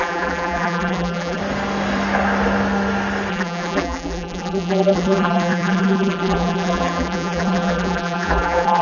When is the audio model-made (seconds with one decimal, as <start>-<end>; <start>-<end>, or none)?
0.0-1.4; 3.3-8.8